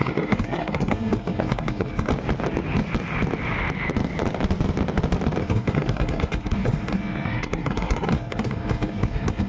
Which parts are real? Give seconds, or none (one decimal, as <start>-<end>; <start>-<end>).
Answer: 2.1-5.4